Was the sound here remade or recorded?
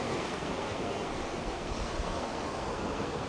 remade